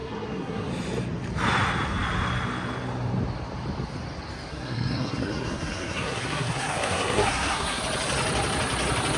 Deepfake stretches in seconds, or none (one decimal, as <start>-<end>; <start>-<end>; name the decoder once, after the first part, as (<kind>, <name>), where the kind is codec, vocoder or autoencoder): 0.0-0.7 (codec, SNAC); 4.5-7.8